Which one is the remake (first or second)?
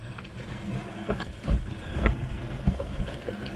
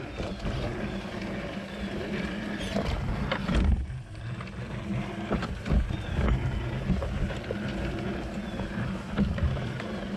first